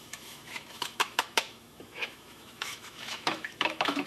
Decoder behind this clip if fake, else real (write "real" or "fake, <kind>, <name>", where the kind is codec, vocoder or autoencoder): fake, autoencoder, DAC-VAE